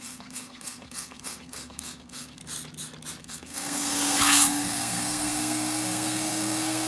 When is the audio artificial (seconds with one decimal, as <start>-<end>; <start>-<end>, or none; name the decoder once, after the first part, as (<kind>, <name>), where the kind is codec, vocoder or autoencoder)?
0.0-2.4 (codec, SNAC); 3.2-6.9